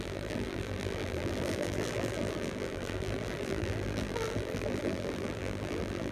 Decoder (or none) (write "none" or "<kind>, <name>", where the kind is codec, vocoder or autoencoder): vocoder, BigVGAN v2